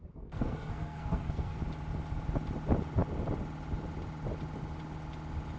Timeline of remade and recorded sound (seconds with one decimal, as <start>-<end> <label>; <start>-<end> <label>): 0.0-1.6 remade; 1.6-5.6 recorded